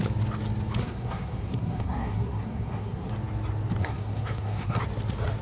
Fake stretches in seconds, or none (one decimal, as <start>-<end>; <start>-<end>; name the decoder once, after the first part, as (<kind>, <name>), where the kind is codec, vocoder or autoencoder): 0.8-3.1 (codec, SNAC); 3.8-4.8